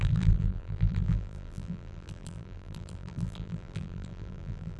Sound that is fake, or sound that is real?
fake